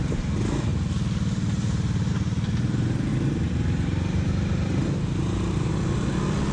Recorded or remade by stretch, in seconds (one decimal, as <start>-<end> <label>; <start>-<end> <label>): 0.0-3.1 recorded; 3.1-5.7 remade; 5.7-6.5 recorded